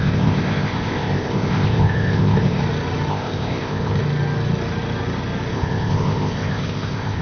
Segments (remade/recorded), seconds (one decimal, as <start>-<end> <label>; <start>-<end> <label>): 0.0-2.6 remade; 2.6-3.1 recorded; 3.1-4.0 remade; 4.0-5.5 recorded; 5.5-7.2 remade